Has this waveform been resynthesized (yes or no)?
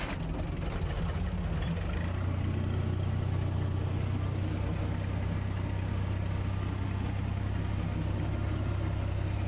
no